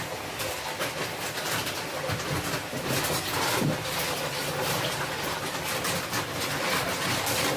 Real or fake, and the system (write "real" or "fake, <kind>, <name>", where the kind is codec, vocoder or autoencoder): real